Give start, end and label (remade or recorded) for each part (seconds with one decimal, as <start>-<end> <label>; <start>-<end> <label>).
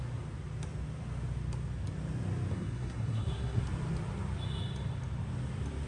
0.0-2.5 recorded; 2.5-3.6 remade; 3.6-5.9 recorded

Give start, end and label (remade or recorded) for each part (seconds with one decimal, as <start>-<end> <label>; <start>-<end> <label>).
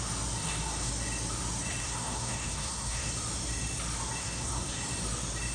0.0-0.4 recorded; 0.4-0.9 remade; 0.9-1.8 recorded; 1.8-3.1 remade; 3.1-4.2 recorded; 4.2-4.7 remade; 4.7-5.5 recorded